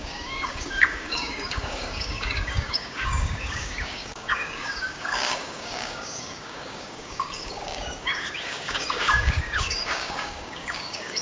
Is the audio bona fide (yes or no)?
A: no